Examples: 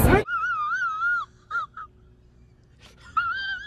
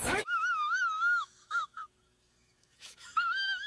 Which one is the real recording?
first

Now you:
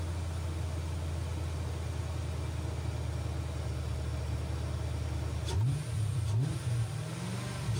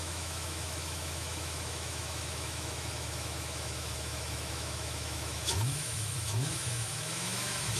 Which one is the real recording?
first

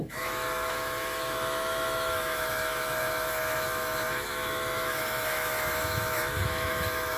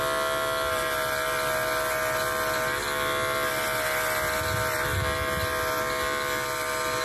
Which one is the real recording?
second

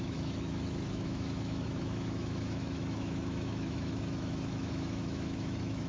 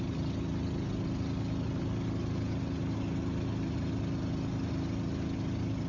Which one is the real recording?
second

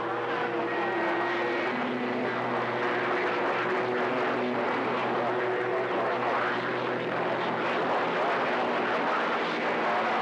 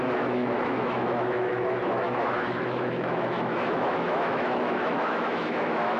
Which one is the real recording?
first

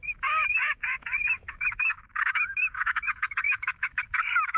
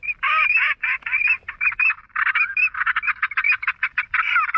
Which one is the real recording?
second